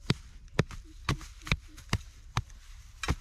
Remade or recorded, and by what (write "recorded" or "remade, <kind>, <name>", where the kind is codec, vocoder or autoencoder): recorded